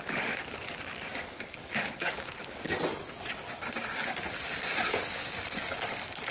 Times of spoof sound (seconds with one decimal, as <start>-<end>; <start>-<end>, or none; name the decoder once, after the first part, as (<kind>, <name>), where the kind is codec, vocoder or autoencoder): 0.0-0.4 (codec, DAC); 1.2-6.3